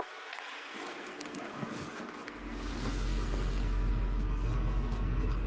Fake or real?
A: fake